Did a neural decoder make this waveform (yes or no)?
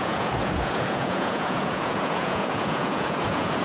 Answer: yes